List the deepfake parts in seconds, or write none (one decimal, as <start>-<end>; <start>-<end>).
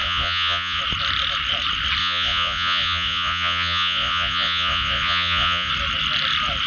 0.0-0.8; 2.0-5.7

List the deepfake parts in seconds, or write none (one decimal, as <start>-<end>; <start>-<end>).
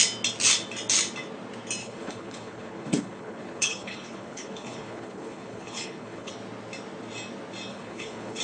1.8-6.3; 7.7-8.4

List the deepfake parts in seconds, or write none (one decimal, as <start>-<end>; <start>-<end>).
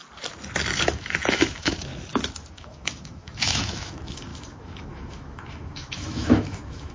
0.8-1.9; 2.5-6.9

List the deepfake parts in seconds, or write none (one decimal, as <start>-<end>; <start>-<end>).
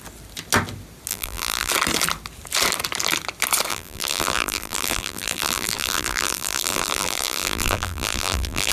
1.1-1.7; 3.7-8.7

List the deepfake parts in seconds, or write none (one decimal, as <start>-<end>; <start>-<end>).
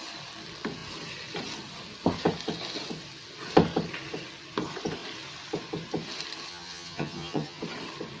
6.5-7.6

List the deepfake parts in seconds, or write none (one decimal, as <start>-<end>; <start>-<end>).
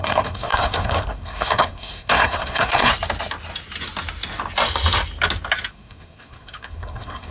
0.0-2.9; 5.7-7.3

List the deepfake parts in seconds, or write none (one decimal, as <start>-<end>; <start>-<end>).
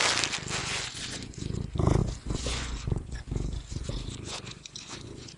0.6-1.6; 2.0-5.4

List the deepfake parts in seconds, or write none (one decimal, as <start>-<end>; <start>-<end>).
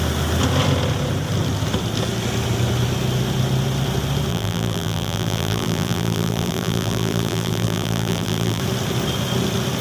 4.3-8.6